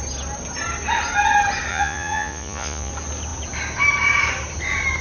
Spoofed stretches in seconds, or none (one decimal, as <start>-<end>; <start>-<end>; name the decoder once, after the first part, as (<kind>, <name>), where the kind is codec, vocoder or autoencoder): 1.7-2.9 (vocoder, Vocos)